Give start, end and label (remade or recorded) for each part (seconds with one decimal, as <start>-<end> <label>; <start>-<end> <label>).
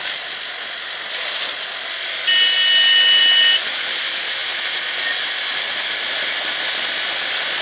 0.0-7.6 recorded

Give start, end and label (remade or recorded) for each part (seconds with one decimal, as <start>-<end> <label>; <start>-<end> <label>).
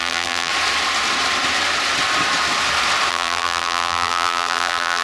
0.0-0.5 remade; 0.5-3.1 recorded; 3.1-5.0 remade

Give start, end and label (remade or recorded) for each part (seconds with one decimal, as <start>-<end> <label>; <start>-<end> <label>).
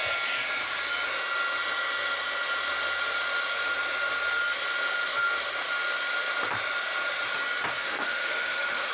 0.0-7.8 recorded; 7.8-8.9 remade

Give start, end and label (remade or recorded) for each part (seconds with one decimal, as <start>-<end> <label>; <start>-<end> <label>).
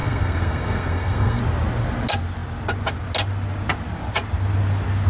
0.0-1.4 remade; 1.4-5.1 recorded